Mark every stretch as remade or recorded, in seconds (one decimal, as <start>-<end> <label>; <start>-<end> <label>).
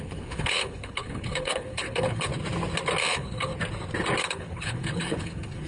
0.0-2.3 remade; 2.3-3.1 recorded; 3.1-3.5 remade; 3.5-4.2 recorded; 4.2-5.7 remade